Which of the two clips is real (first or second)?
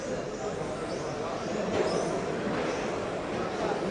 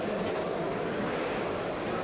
second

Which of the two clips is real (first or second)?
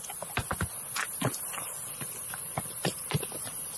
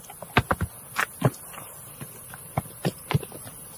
second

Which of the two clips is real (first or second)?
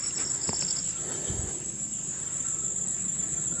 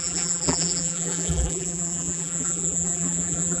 first